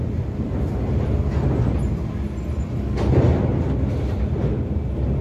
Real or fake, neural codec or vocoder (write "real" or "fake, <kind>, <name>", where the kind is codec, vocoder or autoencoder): real